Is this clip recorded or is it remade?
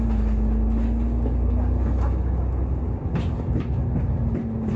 recorded